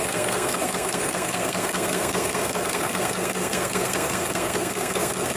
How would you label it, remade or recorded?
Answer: remade